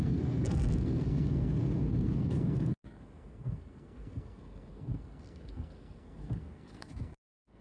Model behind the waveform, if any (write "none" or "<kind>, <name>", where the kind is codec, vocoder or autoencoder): codec, SNAC